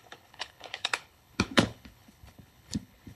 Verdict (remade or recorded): remade